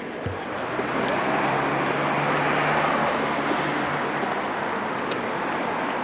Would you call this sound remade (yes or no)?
no